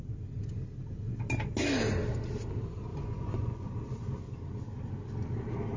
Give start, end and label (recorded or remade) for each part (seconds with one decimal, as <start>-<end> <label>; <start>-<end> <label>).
0.0-2.9 recorded; 2.9-3.7 remade; 3.7-5.8 recorded